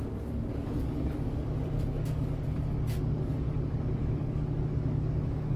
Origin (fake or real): fake